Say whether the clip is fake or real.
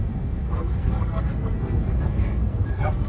fake